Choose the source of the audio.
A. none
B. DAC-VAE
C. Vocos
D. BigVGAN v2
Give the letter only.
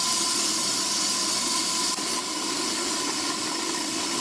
A